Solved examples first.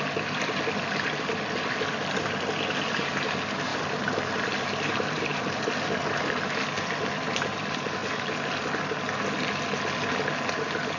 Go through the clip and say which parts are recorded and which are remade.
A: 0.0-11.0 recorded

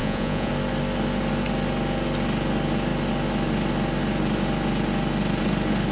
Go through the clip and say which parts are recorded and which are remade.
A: 0.0-0.5 remade; 0.5-5.9 recorded

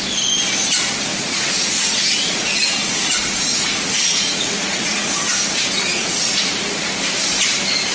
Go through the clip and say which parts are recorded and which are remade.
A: 0.0-1.1 recorded; 1.1-5.3 remade; 5.3-5.9 recorded; 5.9-6.9 remade; 6.9-7.9 recorded